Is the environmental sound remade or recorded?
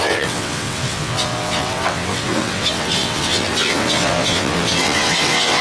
remade